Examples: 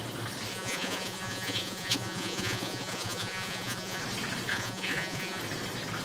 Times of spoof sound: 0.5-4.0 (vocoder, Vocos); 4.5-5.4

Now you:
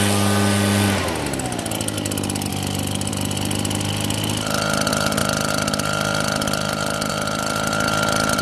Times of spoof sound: 2.5-3.1 (vocoder, BigVGAN v2)

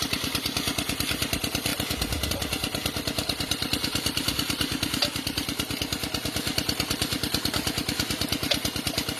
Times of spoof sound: none

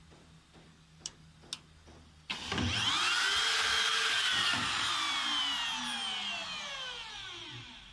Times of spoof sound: 0.7-1.3 (codec, DAC); 3.7-4.9

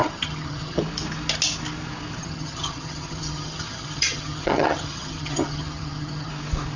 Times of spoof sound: 0.0-0.8 (vocoder, HiFi-GAN); 2.2-6.3